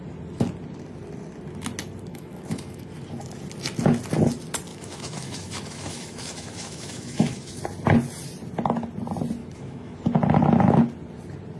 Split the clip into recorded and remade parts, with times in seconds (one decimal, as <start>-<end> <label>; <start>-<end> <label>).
0.0-2.1 recorded; 2.1-2.9 remade; 2.9-4.7 recorded; 4.7-7.6 remade; 7.6-9.4 recorded; 9.4-10.0 remade; 10.0-11.6 recorded